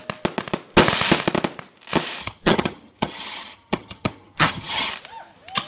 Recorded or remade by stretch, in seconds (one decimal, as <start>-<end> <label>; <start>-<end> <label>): 0.0-2.2 recorded; 2.2-4.9 remade; 4.9-5.7 recorded